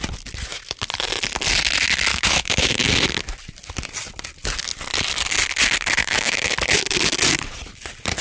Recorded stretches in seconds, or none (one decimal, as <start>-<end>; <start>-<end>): 0.0-2.1; 2.9-6.0; 6.5-8.2